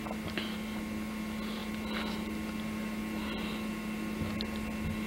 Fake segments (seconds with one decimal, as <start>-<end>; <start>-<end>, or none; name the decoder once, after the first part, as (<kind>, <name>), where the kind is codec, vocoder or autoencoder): none